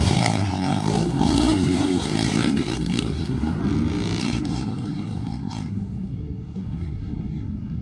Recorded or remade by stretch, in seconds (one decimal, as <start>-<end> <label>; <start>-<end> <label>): 0.0-3.6 remade; 3.6-4.2 recorded; 4.2-7.8 remade